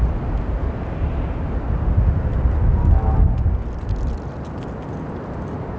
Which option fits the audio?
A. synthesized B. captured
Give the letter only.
B